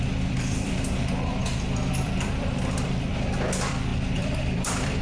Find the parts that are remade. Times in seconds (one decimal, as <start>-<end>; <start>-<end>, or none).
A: 0.0-5.0

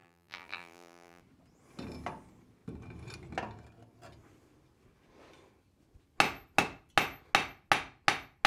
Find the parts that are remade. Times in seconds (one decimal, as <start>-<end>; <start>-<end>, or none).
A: 0.0-1.2